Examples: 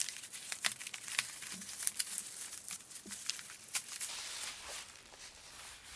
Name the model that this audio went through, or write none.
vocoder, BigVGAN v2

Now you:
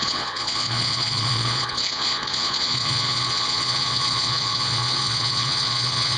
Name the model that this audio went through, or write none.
vocoder, Vocos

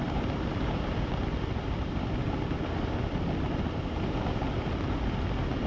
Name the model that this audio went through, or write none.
none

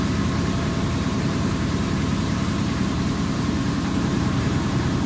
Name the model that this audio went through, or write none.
vocoder, BigVGAN v2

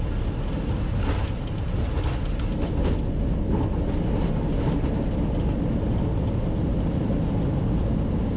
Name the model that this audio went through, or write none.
none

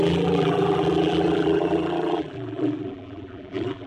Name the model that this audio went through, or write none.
vocoder, BigVGAN v2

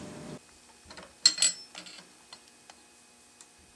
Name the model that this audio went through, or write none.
none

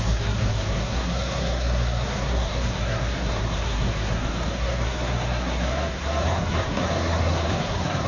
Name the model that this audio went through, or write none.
codec, SNAC